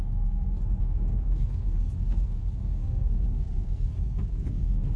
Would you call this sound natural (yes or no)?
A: no